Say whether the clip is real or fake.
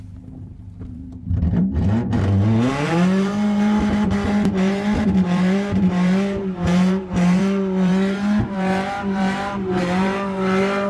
fake